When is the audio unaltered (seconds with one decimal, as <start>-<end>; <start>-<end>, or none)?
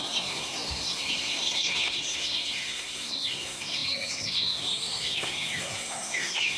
none